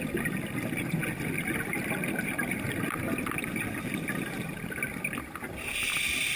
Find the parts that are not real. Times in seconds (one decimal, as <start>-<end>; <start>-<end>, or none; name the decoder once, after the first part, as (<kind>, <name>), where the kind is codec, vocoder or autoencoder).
none